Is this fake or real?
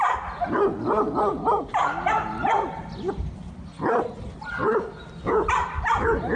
real